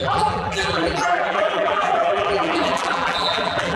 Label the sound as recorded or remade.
remade